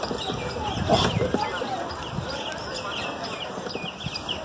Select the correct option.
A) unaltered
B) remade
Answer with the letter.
A